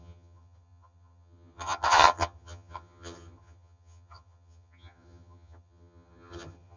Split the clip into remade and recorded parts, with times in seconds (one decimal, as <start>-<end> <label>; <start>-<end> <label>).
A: 0.0-6.8 remade